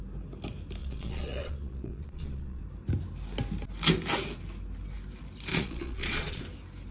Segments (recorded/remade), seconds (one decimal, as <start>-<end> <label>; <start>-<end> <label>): 0.0-0.8 recorded; 0.8-2.6 remade; 2.6-5.5 recorded; 5.5-6.4 remade; 6.4-6.9 recorded